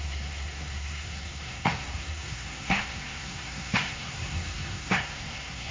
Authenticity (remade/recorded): remade